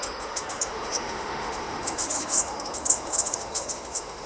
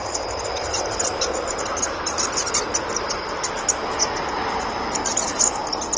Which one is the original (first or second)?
second